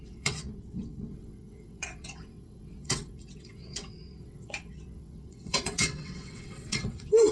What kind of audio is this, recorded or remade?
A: remade